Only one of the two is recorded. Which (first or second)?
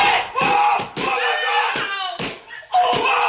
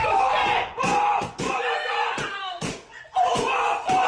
first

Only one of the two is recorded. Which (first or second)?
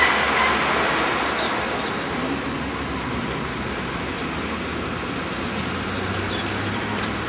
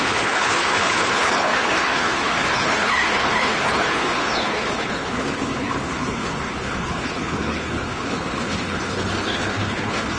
first